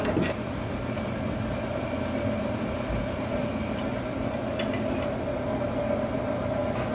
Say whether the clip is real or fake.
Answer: real